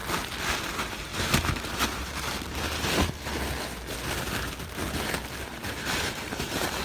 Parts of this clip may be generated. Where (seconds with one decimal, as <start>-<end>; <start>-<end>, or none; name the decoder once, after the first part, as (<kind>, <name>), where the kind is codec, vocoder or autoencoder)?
1.1-2.3 (vocoder, BigVGAN v2); 4.8-6.8